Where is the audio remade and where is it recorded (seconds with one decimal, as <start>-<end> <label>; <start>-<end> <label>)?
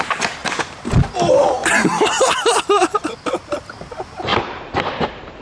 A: 0.0-0.4 recorded; 0.4-1.0 remade; 1.0-1.6 recorded; 1.6-3.1 remade; 3.1-4.3 recorded; 4.3-4.8 remade; 4.8-5.4 recorded